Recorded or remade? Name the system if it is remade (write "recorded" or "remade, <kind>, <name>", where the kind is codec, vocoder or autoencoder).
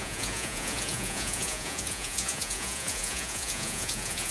remade, vocoder, Vocos